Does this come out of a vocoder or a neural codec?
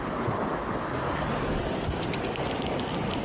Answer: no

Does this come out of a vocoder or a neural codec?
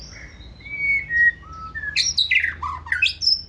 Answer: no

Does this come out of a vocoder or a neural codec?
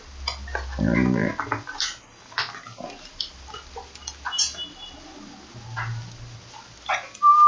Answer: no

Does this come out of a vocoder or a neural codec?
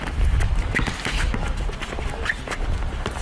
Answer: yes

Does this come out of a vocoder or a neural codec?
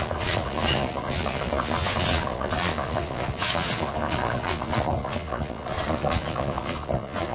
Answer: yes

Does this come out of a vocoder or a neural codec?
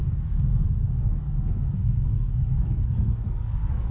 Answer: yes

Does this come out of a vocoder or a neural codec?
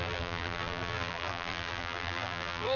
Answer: yes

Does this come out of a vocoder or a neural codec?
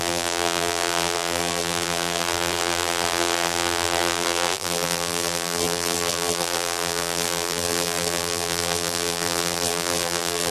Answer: yes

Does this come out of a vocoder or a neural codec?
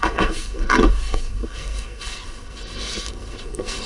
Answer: yes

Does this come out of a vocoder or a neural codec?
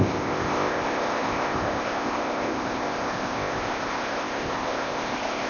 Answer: yes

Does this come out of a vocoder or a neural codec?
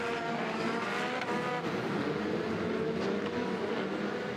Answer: no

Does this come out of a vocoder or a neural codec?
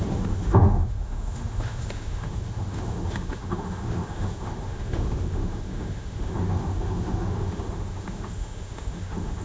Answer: yes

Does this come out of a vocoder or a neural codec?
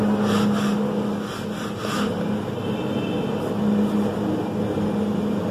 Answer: no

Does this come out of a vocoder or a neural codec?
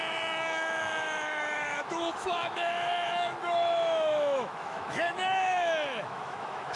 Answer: yes